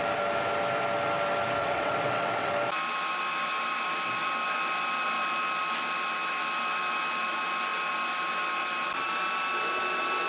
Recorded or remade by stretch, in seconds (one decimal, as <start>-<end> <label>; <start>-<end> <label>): 0.0-1.6 recorded; 1.6-2.5 remade; 2.5-10.3 recorded